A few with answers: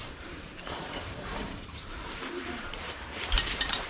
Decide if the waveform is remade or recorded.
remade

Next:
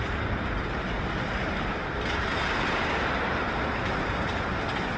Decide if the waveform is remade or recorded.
remade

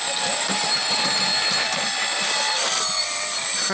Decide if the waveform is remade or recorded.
remade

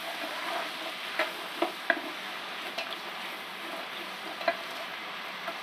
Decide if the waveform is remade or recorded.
recorded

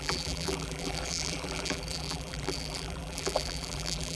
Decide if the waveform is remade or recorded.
remade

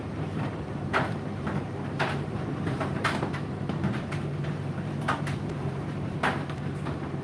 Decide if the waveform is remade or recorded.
remade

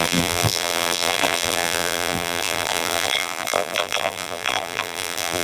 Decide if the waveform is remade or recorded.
remade